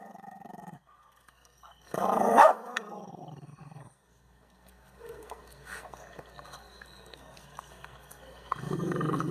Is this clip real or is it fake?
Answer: fake